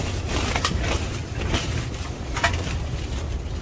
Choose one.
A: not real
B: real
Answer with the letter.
B